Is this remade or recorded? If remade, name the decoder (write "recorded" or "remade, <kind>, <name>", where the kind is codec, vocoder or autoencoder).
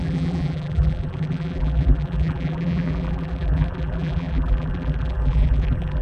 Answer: remade, vocoder, BigVGAN v2